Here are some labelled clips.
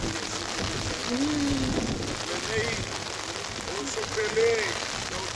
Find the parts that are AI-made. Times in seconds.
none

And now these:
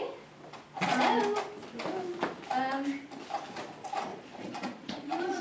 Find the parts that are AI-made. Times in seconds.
4.1-5.4 (vocoder, Vocos)

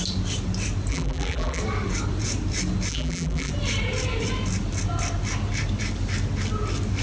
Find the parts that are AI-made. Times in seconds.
0.9-1.6 (vocoder, BigVGAN v2); 2.9-3.5

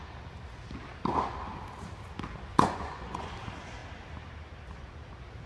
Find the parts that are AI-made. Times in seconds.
2.5-3.3 (vocoder, Vocos)